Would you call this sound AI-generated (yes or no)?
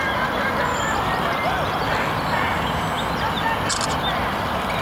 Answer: no